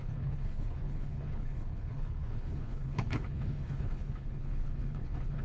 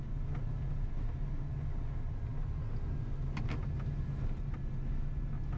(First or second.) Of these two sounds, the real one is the second